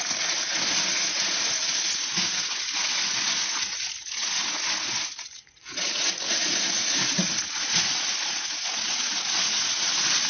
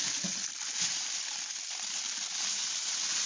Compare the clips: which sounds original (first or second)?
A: second